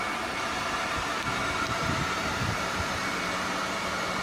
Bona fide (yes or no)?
no